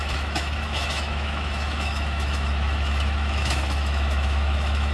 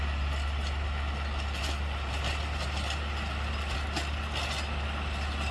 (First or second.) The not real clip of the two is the first